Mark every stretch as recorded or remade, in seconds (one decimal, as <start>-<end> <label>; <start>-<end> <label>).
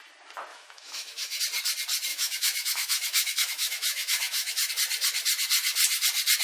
0.0-0.5 recorded; 0.5-1.4 remade; 1.4-2.1 recorded; 2.1-4.7 remade; 4.7-6.4 recorded